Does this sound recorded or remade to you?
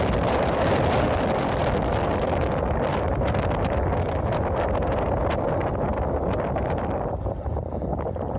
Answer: remade